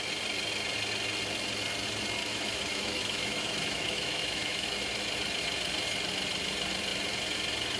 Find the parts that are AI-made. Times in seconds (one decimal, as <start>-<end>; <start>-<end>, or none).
2.2-4.8